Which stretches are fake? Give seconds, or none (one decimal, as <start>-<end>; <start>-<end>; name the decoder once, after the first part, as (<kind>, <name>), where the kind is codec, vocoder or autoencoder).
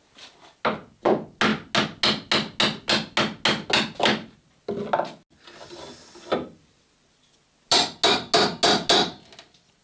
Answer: none